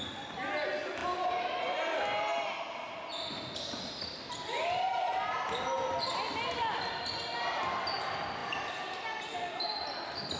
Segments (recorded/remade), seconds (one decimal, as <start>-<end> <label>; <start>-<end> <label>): 0.0-10.4 recorded